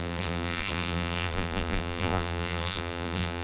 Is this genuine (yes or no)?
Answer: no